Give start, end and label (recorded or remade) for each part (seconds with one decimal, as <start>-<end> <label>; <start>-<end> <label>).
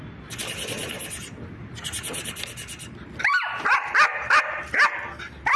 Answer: 0.0-5.6 recorded